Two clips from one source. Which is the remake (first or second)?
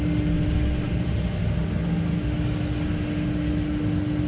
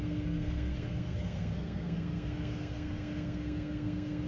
second